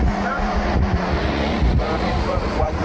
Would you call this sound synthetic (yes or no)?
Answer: yes